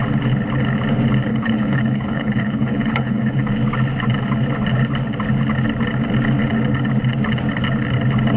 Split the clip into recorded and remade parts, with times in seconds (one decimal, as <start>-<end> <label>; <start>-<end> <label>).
0.0-1.3 recorded; 1.3-3.5 remade; 3.5-8.4 recorded